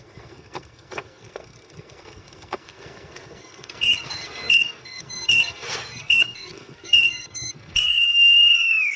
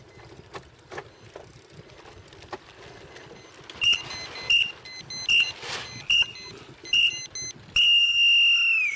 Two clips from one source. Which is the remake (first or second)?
first